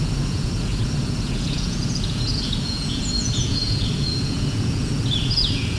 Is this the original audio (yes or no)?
no